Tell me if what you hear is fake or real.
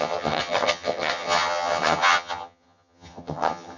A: fake